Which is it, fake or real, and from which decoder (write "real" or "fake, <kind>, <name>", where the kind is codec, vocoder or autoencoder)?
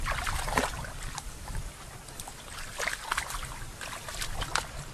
real